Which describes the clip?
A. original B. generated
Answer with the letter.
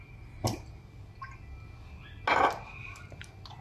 A